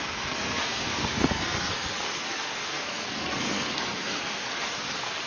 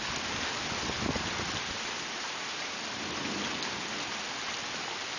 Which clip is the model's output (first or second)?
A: first